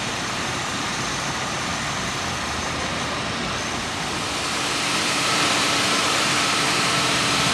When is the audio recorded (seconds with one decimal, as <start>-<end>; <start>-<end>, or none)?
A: 1.7-4.5

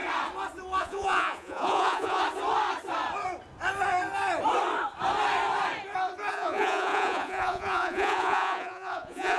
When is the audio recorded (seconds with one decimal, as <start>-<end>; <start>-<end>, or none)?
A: 0.0-0.8; 2.2-6.3

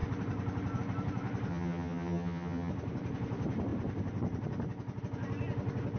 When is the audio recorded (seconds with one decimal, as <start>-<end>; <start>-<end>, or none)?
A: 0.0-1.5; 2.7-6.0

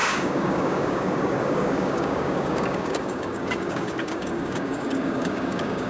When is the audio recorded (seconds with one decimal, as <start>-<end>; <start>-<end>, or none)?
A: none